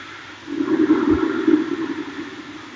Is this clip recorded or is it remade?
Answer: recorded